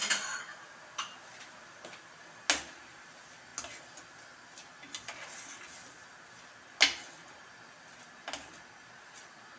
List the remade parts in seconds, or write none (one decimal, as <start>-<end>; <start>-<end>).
none